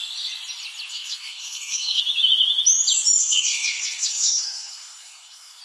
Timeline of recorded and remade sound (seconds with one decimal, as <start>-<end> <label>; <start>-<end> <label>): 0.0-0.9 recorded; 0.9-2.0 remade; 2.0-3.2 recorded; 3.2-5.6 remade